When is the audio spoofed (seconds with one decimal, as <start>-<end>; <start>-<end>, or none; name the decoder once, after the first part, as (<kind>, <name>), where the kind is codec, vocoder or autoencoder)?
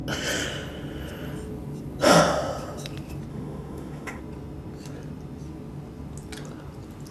3.3-4.2 (autoencoder, DAC-VAE)